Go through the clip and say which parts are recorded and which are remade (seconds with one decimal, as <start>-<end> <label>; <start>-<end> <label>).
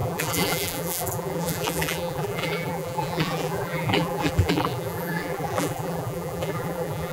0.0-7.1 remade